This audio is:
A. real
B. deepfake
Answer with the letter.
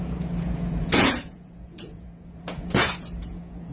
B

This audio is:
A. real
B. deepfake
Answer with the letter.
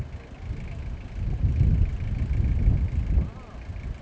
A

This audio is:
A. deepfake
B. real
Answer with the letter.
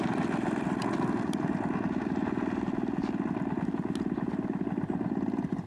B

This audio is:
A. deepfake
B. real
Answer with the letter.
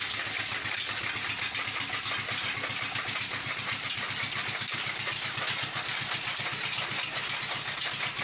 B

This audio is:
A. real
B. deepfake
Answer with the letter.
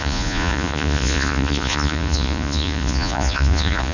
B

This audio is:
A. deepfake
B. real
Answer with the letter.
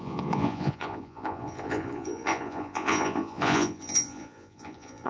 A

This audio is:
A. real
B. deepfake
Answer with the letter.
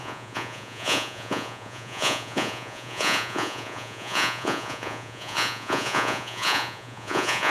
B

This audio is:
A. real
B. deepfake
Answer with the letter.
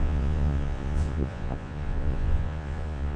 B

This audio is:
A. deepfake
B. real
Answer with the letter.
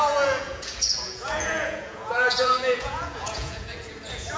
A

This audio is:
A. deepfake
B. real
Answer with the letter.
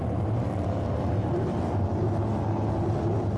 B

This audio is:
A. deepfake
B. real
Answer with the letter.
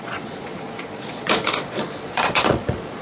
A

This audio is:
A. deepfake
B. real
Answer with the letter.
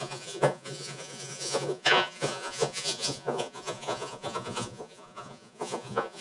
A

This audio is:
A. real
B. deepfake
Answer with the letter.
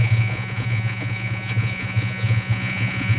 B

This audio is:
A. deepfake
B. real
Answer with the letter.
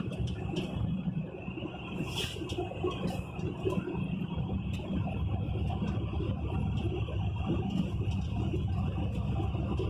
B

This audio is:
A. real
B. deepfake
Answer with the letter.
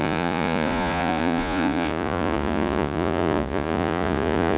B